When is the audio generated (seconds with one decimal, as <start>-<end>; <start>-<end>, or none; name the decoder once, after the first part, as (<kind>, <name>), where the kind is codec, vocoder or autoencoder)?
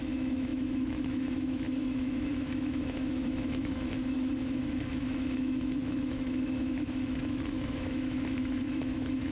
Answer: 0.0-9.3 (autoencoder, DAC-VAE)